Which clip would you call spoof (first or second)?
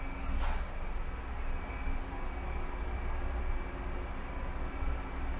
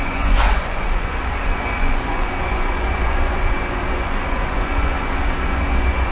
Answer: second